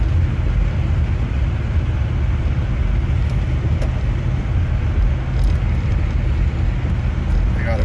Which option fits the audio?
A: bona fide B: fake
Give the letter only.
A